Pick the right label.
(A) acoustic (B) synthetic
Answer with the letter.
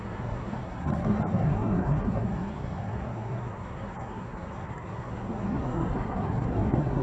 B